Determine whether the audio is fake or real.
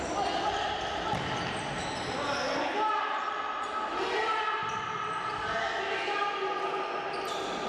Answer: real